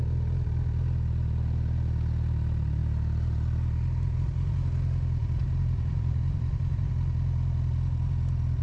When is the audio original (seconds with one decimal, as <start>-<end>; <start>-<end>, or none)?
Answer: 0.0-2.8; 4.1-5.2; 6.9-8.6